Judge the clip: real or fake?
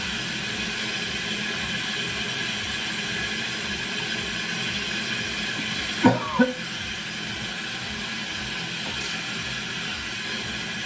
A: real